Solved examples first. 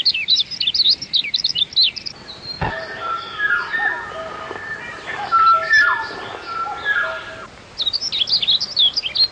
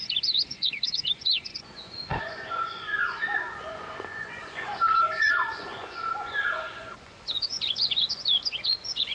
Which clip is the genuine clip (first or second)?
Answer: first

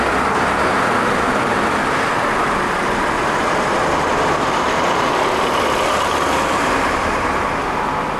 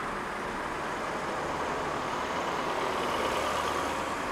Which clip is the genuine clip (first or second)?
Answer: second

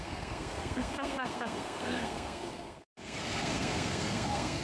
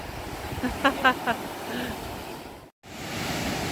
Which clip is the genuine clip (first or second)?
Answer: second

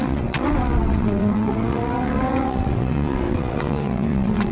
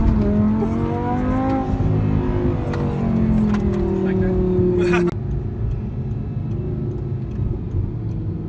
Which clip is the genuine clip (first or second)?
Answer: second